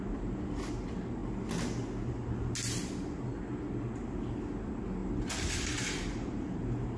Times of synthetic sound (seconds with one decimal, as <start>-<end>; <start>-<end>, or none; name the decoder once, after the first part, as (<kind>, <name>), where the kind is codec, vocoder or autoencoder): 5.0-7.0 (vocoder, BigVGAN v2)